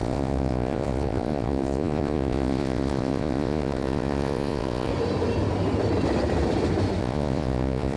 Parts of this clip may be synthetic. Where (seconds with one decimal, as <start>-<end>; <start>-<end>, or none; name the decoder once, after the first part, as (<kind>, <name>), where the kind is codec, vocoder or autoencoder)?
0.0-4.9 (vocoder, Vocos); 7.0-8.0